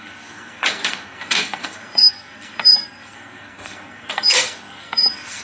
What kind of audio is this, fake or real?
fake